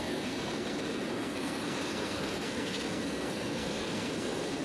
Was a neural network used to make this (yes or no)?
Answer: yes